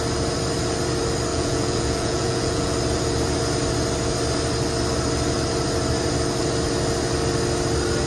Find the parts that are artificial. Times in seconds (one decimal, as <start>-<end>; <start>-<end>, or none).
1.3-2.7